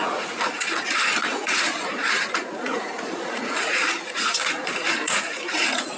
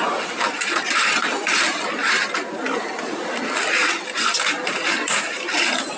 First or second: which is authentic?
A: second